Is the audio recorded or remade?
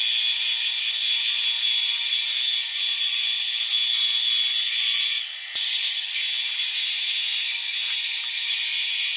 recorded